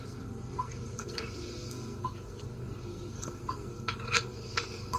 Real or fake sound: fake